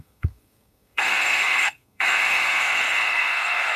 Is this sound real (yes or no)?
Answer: no